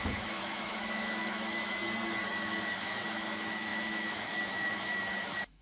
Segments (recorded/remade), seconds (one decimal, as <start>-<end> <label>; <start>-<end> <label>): 0.0-1.8 remade; 1.8-2.3 recorded; 2.3-5.6 remade